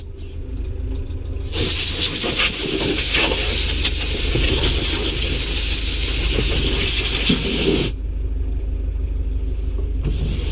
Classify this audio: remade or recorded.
recorded